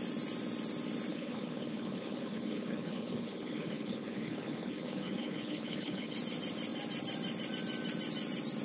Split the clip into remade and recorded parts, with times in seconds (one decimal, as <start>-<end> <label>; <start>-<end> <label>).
0.0-1.1 recorded; 1.1-6.1 remade; 6.1-8.6 recorded